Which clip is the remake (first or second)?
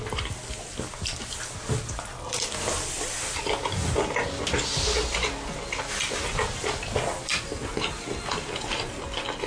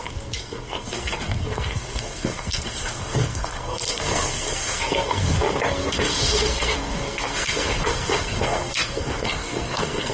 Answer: second